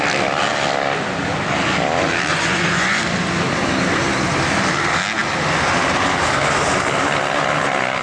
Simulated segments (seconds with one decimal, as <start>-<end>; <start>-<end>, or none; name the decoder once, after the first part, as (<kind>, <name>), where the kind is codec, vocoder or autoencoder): 2.3-3.0 (vocoder, Vocos)